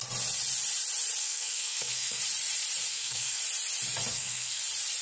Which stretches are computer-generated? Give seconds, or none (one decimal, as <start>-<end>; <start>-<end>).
1.2-2.2; 2.9-3.4; 4.1-4.6